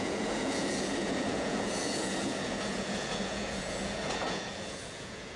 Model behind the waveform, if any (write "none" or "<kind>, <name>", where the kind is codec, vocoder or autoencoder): vocoder, Vocos